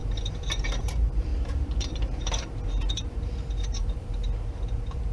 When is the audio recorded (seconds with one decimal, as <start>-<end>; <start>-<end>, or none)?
0.0-0.8

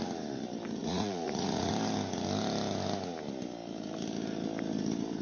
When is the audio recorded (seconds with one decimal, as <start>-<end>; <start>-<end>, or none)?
0.0-0.8; 1.7-5.2

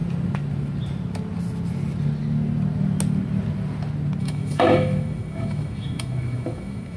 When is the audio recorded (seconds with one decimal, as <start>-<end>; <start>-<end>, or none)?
0.0-4.2